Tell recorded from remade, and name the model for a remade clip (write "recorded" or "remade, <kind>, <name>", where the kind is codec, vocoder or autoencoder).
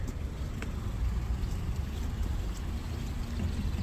recorded